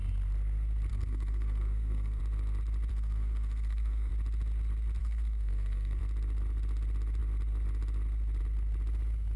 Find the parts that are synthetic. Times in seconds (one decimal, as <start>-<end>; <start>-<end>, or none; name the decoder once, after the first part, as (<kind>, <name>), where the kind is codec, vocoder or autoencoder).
0.9-2.2 (codec, SNAC); 2.9-4.1; 5.0-6.0